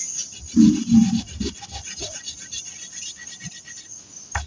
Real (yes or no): yes